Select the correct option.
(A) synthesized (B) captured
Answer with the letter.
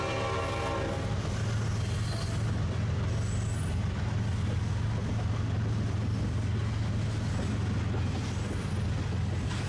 B